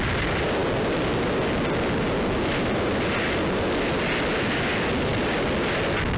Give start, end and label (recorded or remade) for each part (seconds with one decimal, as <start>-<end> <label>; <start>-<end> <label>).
0.0-6.2 recorded